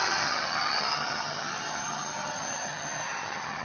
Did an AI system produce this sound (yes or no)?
yes